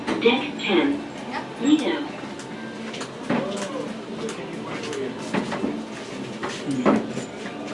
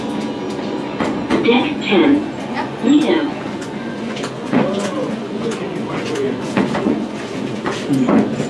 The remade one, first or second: second